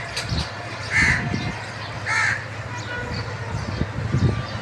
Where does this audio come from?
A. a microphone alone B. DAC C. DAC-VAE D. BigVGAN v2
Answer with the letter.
A